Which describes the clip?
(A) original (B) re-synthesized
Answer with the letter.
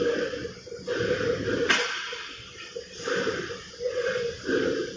A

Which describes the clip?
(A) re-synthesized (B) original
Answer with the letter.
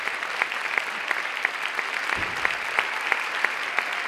B